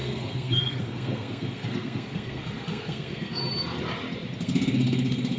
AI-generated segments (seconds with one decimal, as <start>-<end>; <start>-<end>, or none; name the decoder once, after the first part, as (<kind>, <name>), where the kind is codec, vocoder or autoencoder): 0.0-3.4 (codec, SNAC); 4.4-5.4